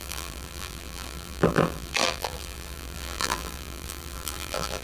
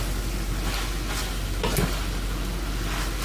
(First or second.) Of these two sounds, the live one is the second